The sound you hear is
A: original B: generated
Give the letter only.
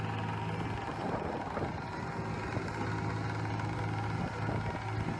A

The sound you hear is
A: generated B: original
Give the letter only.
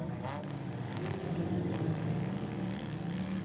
A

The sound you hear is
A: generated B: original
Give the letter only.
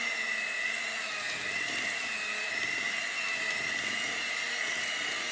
B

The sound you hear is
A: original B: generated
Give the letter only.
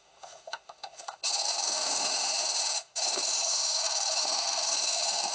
B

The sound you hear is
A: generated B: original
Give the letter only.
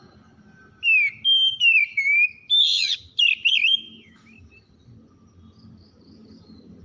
B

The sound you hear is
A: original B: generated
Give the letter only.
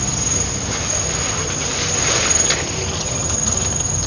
A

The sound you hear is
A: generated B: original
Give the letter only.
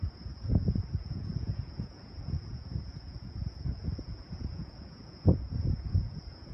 A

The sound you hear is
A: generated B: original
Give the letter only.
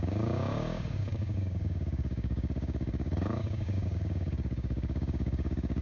A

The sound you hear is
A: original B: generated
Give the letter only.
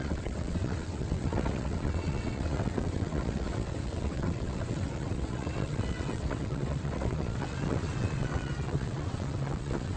B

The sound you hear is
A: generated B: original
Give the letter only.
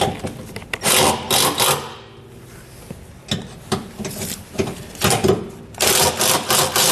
B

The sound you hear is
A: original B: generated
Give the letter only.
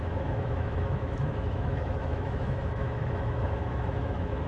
B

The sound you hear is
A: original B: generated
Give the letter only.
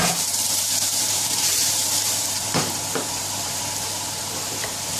B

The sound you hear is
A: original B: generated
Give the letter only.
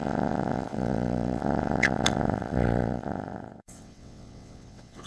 B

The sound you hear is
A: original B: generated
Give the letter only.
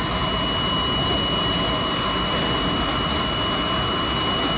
A